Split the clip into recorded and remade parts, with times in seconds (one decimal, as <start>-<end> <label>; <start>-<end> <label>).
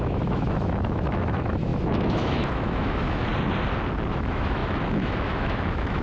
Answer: 0.0-3.2 remade; 3.2-4.1 recorded; 4.1-6.0 remade